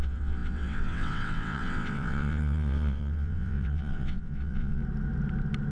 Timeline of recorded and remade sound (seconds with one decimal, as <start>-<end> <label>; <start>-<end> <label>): 0.0-4.8 remade; 4.8-5.7 recorded